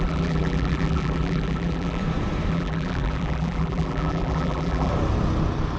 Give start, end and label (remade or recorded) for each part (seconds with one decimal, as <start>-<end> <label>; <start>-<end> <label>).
0.0-2.0 remade; 2.0-2.5 recorded; 2.5-4.9 remade; 4.9-5.8 recorded